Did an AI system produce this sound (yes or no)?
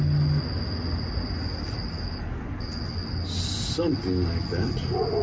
no